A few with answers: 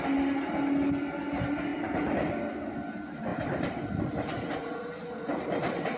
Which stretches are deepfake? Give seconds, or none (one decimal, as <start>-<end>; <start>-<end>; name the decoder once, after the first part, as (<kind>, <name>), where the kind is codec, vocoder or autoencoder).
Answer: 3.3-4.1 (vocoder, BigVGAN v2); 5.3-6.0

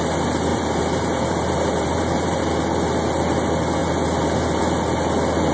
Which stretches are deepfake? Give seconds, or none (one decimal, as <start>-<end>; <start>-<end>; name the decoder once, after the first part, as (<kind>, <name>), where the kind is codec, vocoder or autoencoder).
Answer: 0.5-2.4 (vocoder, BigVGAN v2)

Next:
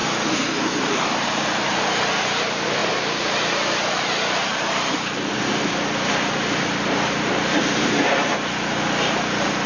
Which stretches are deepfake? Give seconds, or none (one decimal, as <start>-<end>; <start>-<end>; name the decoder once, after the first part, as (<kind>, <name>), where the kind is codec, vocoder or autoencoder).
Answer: 0.8-9.7 (vocoder, BigVGAN v2)